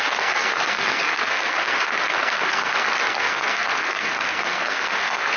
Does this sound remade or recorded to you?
remade